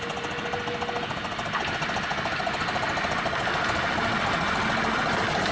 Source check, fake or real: real